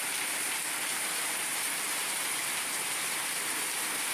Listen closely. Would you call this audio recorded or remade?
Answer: remade